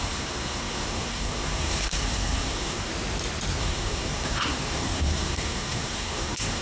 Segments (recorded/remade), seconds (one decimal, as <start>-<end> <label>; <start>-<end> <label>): 0.0-2.9 remade; 2.9-3.6 recorded; 3.6-6.6 remade